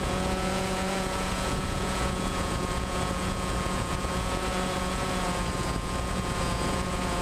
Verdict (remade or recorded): remade